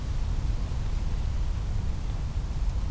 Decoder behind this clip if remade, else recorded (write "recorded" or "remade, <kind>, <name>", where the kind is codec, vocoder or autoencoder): recorded